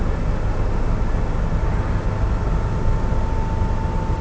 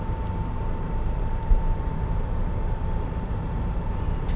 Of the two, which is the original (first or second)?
first